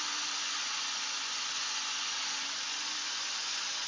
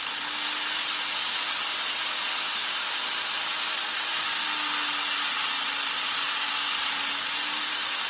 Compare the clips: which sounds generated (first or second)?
first